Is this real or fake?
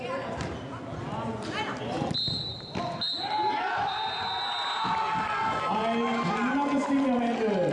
real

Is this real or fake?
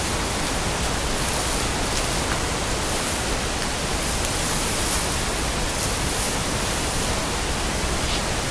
real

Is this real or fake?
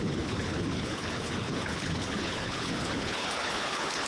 fake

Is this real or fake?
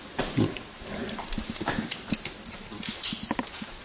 fake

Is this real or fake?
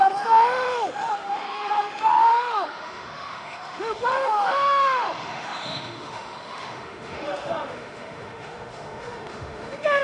fake